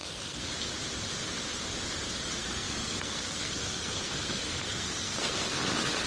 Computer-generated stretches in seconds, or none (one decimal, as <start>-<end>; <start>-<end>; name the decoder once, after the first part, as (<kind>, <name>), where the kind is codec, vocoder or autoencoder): 0.0-0.5 (codec, SNAC); 2.4-5.6

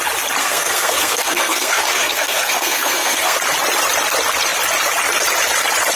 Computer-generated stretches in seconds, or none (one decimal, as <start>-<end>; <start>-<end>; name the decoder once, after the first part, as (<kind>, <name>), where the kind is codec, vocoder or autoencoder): 0.4-3.4 (codec, SNAC)

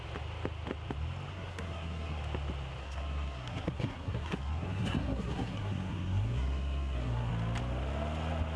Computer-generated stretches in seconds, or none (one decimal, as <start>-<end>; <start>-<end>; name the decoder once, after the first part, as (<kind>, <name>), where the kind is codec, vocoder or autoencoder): 1.3-2.2 (codec, SNAC); 2.8-7.3

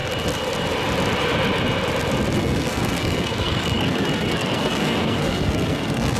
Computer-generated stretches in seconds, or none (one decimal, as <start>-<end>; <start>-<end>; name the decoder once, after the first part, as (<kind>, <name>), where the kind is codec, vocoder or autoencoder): 2.4-6.2 (codec, SNAC)

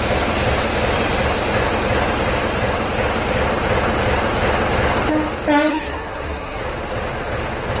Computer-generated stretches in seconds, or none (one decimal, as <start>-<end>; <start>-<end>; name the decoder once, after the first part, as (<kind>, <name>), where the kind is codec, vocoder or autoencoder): 5.7-6.6 (codec, SNAC)

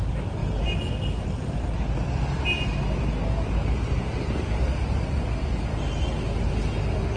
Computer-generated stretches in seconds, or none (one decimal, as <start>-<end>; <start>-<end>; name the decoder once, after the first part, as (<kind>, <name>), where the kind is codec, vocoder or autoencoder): none

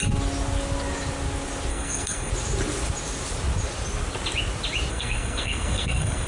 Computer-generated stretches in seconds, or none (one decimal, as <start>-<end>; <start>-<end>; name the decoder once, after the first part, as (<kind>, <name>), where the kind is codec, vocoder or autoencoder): 1.7-2.3 (codec, SNAC); 4.9-6.3